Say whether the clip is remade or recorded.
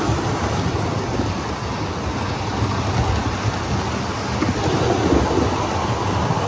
recorded